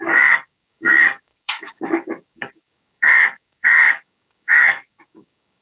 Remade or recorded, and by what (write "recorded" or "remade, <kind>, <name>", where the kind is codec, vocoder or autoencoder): remade, codec, DAC